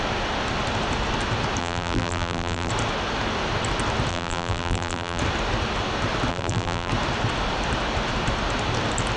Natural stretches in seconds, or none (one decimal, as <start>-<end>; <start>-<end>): 0.0-1.6; 2.7-4.1; 5.2-6.3; 6.9-9.2